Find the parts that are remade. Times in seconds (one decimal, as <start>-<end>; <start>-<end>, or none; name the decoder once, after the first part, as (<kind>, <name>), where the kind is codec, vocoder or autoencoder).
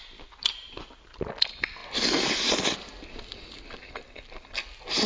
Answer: none